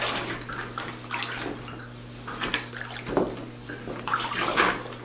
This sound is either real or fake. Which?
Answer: real